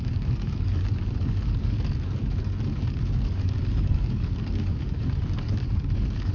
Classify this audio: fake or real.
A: fake